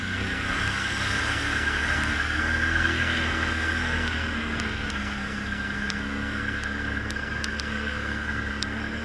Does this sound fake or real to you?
fake